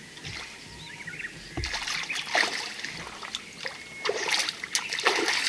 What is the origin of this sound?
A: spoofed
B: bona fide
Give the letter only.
B